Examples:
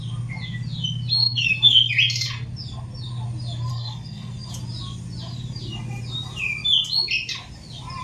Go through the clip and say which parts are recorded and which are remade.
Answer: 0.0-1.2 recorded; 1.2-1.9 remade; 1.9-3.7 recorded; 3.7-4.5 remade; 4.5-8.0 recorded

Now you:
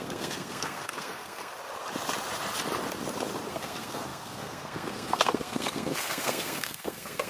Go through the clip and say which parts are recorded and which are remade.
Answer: 0.0-1.5 remade; 1.5-3.5 recorded; 3.5-7.3 remade

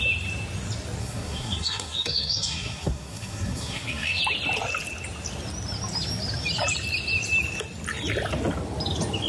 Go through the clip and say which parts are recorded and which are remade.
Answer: 0.0-1.0 recorded; 1.0-4.2 remade; 4.2-9.3 recorded

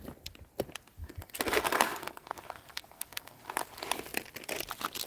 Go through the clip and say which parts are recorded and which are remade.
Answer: 0.0-1.0 recorded; 1.0-3.4 remade; 3.4-5.1 recorded

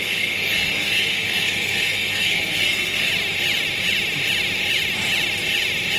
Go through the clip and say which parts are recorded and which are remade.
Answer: 0.0-3.1 remade; 3.1-6.0 recorded

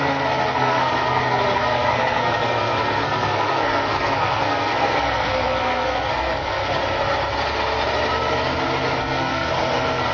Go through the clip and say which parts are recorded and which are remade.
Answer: 0.0-6.8 remade; 6.8-9.0 recorded; 9.0-10.1 remade

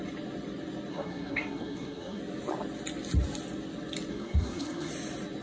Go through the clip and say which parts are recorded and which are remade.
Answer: 0.0-0.9 recorded; 0.9-2.2 remade; 2.2-4.1 recorded; 4.1-4.9 remade; 4.9-5.4 recorded

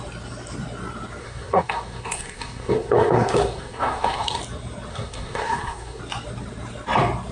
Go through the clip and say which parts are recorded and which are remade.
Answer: 0.0-1.2 recorded; 1.2-4.4 remade; 4.4-4.9 recorded; 4.9-6.0 remade; 6.0-7.3 recorded